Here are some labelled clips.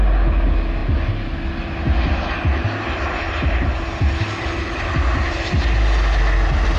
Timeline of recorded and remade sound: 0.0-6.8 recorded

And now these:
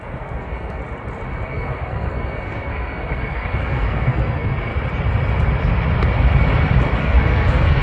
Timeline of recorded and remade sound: 0.0-0.8 remade; 0.8-1.5 recorded; 1.5-4.7 remade; 4.7-7.0 recorded; 7.0-7.8 remade

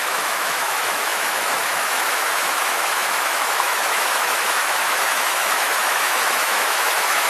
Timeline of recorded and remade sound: 0.0-7.3 remade

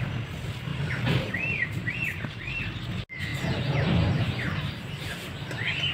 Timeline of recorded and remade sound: 0.0-0.7 recorded; 0.7-2.6 remade; 2.6-3.3 recorded; 3.3-5.9 remade

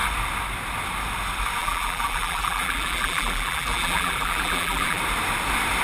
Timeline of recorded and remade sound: 0.0-1.6 recorded; 1.6-5.0 remade; 5.0-5.8 recorded

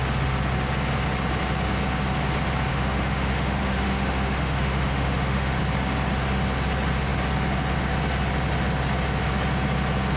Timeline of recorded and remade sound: 0.0-2.7 recorded; 2.7-5.6 remade; 5.6-10.2 recorded